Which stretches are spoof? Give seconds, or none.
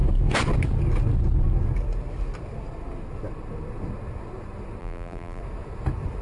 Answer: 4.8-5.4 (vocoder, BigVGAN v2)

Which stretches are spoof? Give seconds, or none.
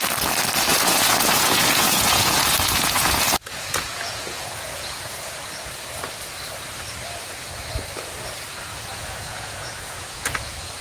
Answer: 0.7-5.5 (vocoder, Vocos); 8.7-10.8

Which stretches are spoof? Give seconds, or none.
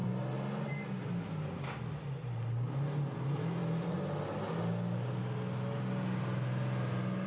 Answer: none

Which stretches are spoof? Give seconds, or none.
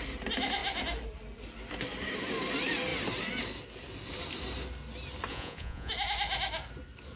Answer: 5.3-5.9 (vocoder, Vocos)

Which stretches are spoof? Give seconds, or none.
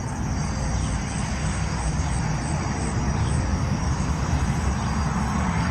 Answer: 1.4-2.1 (codec, DAC); 3.2-4.3